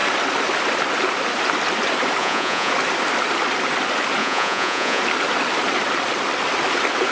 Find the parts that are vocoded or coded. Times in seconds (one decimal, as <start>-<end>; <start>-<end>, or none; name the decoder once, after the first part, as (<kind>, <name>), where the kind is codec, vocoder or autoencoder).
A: 2.2-2.7 (vocoder, Vocos); 4.2-5.0